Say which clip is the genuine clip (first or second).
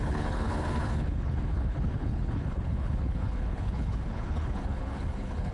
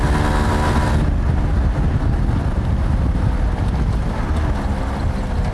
second